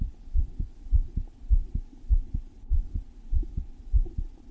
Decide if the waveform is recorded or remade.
recorded